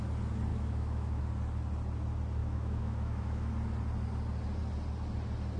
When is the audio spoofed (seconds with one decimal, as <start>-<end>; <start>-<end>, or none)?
0.5-1.2; 2.4-3.5

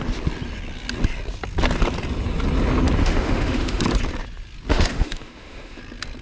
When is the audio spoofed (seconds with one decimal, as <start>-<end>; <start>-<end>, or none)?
3.0-3.8; 4.7-5.8

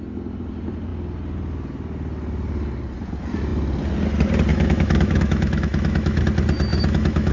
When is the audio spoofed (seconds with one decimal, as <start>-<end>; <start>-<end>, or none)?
4.5-6.2; 6.7-7.3

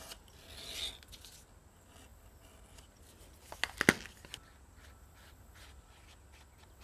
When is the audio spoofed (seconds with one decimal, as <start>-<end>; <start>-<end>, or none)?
none

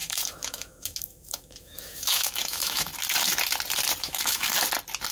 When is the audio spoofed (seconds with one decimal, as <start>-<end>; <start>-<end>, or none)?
0.0-2.9; 4.0-4.5

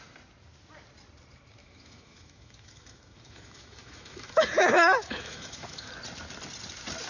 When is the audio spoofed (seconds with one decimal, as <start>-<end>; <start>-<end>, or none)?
1.6-5.9

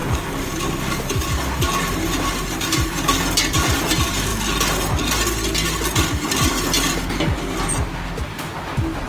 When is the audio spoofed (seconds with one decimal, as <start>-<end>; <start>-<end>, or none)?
none